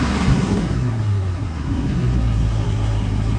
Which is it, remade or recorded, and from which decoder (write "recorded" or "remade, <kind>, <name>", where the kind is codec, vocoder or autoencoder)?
remade, codec, SNAC